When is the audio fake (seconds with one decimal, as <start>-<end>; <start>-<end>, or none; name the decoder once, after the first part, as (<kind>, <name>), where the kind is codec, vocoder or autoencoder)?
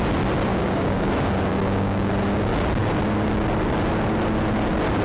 0.5-1.1 (codec, DAC); 1.5-2.1